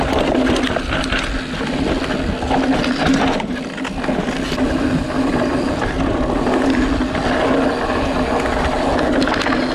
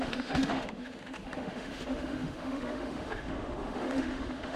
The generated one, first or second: second